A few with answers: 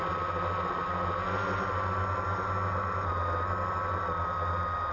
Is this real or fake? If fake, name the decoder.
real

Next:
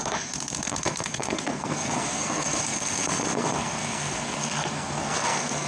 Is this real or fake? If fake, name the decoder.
fake, codec, SNAC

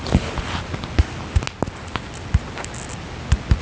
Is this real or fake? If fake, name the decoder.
real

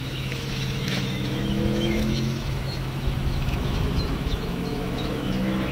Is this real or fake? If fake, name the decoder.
fake, autoencoder, DAC-VAE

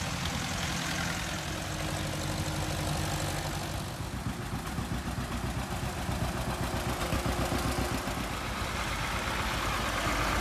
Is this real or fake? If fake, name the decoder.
real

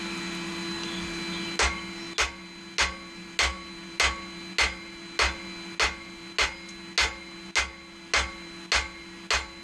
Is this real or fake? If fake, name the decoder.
real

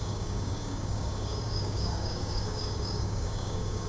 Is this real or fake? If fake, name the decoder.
fake, codec, DAC